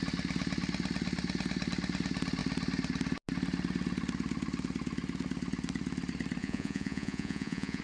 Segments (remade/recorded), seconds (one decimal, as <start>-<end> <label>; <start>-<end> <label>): 0.0-6.4 recorded; 6.4-7.8 remade